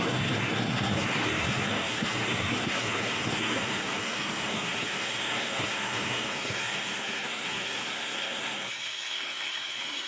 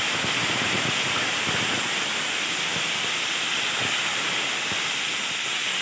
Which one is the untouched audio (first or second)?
second